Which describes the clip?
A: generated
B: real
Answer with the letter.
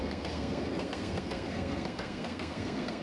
A